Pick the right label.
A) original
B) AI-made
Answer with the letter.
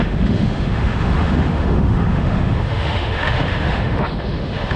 B